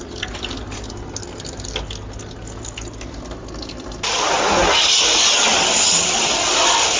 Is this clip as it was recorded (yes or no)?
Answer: yes